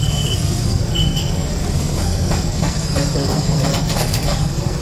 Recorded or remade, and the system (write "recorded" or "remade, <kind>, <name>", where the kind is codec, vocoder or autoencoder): remade, codec, SNAC